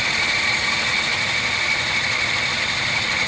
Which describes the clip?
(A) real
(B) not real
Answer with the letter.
A